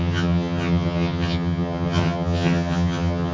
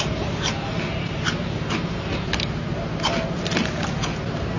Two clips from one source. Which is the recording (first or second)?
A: second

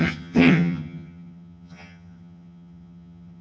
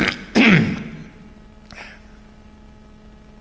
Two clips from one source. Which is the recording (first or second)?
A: second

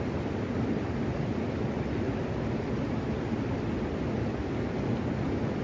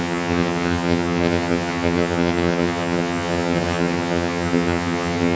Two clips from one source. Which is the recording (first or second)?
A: first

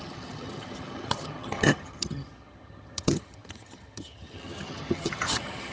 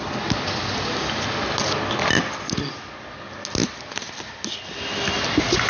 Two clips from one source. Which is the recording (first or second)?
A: second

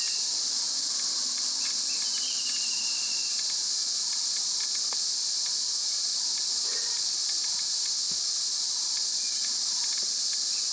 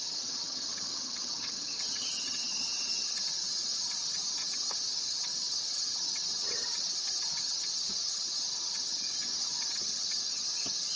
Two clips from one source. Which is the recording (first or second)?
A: first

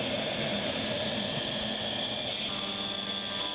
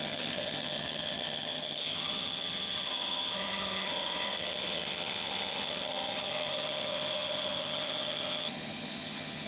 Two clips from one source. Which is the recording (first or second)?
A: first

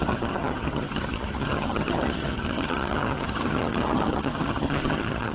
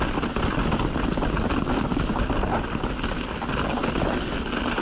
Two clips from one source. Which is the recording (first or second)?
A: second